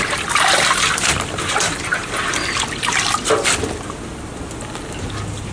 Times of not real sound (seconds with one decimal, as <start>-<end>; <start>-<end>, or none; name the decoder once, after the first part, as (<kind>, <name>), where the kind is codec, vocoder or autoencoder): none